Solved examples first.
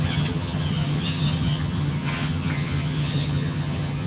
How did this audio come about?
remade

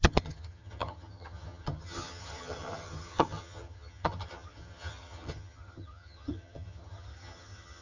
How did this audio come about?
remade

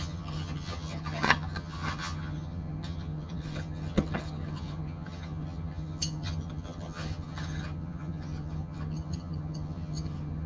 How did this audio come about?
remade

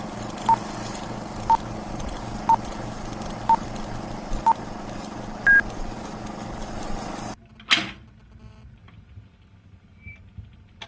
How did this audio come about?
recorded